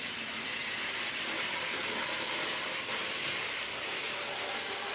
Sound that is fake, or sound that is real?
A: real